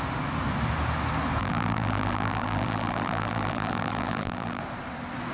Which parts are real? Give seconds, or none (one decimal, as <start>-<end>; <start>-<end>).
0.0-1.4; 4.6-5.3